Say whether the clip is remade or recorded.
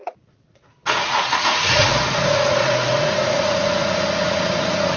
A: remade